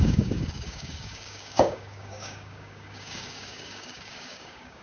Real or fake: fake